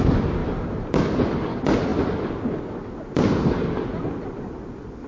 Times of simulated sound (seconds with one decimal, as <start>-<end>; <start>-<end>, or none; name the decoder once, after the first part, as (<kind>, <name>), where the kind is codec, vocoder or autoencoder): none